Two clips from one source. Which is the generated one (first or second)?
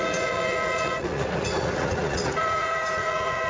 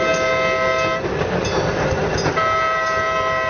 first